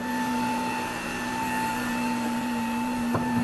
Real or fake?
fake